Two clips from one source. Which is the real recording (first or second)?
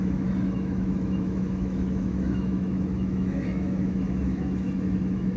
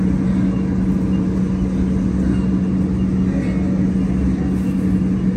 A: second